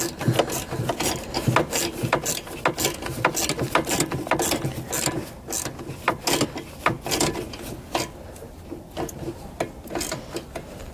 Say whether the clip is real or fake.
real